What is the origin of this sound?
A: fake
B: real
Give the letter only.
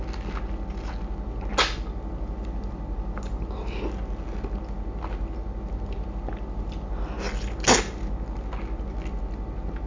B